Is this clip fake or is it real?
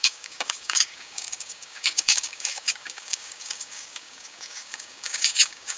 fake